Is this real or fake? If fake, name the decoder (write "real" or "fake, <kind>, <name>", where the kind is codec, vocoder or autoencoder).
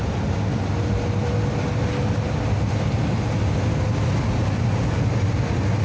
real